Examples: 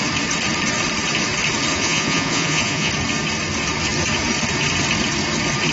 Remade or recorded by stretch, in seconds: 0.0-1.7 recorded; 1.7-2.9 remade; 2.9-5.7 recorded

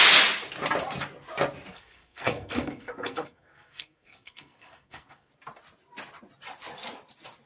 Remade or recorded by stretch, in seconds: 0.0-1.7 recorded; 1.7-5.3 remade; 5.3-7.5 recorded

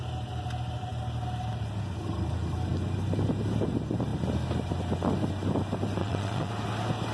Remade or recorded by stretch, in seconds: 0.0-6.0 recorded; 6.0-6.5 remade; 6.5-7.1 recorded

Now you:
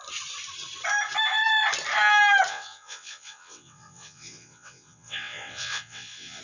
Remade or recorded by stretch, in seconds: 0.0-2.5 recorded; 2.5-6.4 remade